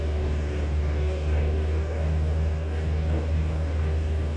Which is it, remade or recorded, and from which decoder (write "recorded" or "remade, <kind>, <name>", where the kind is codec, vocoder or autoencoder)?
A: remade, codec, DAC